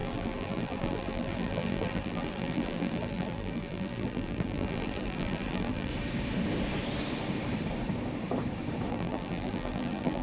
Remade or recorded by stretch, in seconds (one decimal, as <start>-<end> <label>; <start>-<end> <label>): 0.0-5.9 remade; 5.9-8.9 recorded; 8.9-10.2 remade